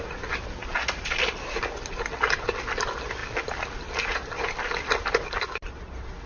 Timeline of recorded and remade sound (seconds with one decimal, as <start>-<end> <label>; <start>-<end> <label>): 0.0-0.6 recorded; 0.6-2.6 remade; 2.6-6.3 recorded